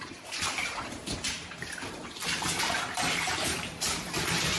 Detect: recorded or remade remade